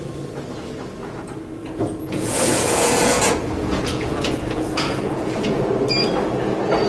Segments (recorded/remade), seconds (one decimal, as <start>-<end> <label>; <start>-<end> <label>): 0.0-1.6 recorded; 1.6-5.7 remade; 5.7-6.9 recorded